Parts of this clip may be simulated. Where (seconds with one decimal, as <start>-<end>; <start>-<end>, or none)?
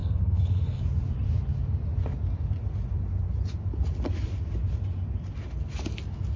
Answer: 0.0-0.8